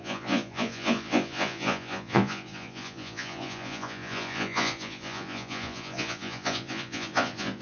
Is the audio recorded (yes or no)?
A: no